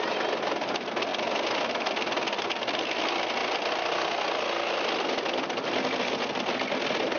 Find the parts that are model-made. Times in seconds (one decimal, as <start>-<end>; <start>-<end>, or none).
none